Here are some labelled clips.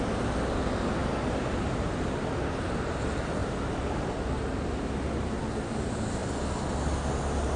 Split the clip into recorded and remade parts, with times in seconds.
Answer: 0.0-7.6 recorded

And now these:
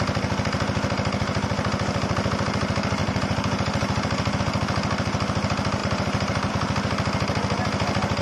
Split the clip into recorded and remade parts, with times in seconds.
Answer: 0.0-3.0 recorded; 3.0-4.4 remade; 4.4-5.8 recorded; 5.8-6.5 remade; 6.5-8.2 recorded

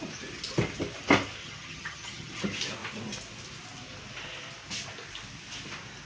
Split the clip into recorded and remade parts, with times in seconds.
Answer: 0.0-1.4 recorded; 1.4-2.4 remade; 2.4-6.1 recorded

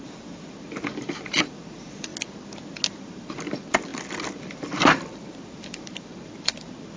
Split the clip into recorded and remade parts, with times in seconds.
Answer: 0.0-2.1 remade; 2.1-3.0 recorded; 3.0-3.9 remade; 3.9-4.4 recorded; 4.4-7.0 remade

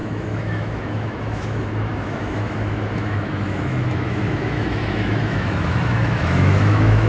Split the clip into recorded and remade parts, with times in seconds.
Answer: 0.0-7.1 remade